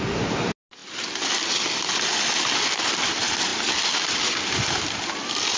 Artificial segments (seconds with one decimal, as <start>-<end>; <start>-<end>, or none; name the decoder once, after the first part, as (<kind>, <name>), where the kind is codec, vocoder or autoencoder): none